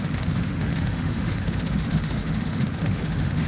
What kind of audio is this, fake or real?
fake